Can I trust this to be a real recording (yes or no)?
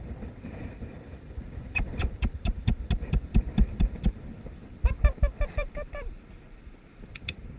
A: no